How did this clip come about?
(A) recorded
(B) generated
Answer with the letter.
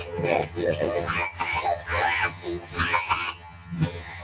B